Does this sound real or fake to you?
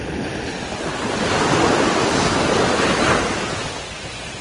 real